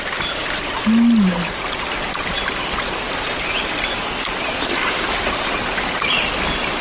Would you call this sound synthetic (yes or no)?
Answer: no